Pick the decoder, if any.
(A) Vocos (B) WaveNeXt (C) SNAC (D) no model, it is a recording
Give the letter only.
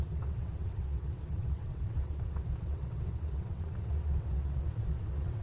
B